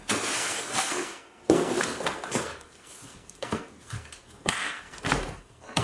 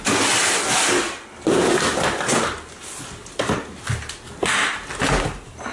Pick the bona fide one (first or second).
second